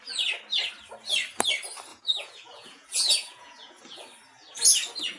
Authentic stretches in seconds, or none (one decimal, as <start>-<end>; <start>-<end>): 0.0-1.9; 3.8-5.2